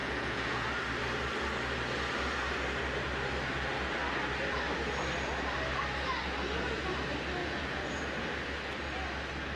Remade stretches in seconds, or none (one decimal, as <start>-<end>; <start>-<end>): 0.0-0.7; 7.4-8.0